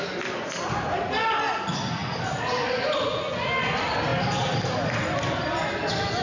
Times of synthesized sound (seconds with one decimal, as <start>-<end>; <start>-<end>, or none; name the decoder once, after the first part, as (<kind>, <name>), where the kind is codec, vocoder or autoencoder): none